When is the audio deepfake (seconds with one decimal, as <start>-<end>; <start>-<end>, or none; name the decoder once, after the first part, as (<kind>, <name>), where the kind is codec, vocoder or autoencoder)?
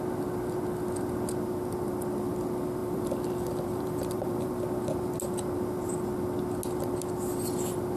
2.8-4.5 (vocoder, BigVGAN v2)